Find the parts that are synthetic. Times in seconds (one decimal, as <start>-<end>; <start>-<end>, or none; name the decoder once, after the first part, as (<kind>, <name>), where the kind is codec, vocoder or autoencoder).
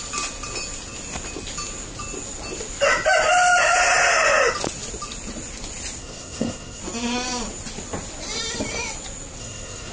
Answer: 6.0-6.8 (codec, SNAC); 9.4-9.9